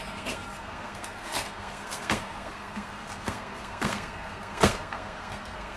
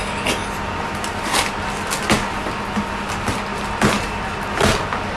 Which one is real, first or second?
second